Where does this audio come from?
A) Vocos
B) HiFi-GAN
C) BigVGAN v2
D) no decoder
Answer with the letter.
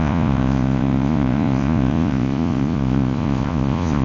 A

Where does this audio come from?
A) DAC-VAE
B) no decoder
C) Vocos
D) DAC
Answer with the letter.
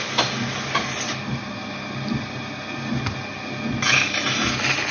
B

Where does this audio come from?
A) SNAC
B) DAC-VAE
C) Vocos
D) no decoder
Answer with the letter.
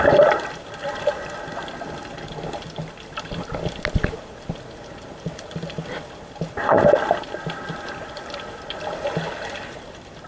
D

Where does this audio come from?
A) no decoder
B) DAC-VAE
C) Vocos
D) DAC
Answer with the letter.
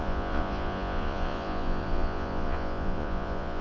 C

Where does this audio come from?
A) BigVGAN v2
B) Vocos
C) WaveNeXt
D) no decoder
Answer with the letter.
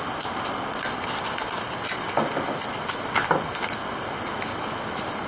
D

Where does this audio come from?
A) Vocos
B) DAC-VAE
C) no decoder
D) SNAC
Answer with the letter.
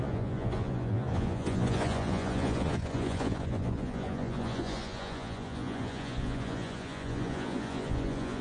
A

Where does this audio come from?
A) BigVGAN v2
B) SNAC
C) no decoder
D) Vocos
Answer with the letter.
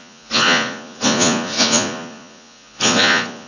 D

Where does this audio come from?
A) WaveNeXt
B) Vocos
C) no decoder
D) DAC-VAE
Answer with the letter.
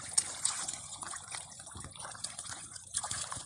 B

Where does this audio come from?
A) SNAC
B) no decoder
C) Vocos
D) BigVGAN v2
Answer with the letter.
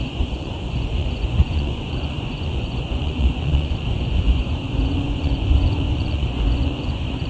C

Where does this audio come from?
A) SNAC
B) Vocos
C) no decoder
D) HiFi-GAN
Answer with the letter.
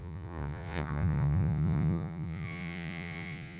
B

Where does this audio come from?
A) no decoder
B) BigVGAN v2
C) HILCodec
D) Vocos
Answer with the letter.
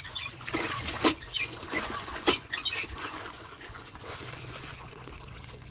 D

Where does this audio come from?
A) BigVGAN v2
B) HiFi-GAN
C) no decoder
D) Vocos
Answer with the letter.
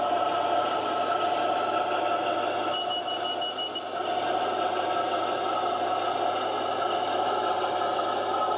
C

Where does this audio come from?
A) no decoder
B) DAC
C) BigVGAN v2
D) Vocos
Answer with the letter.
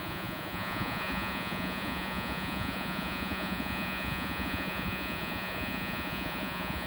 D